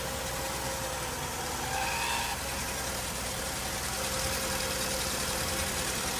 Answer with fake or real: real